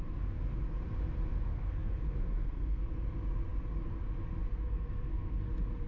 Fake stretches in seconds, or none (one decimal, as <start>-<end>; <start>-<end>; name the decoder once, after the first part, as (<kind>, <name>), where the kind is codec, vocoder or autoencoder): 1.5-2.8 (codec, SNAC); 4.5-5.5